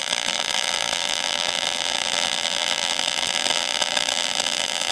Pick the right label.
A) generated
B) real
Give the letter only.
A